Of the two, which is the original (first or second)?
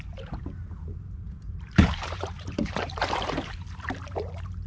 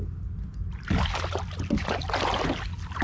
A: second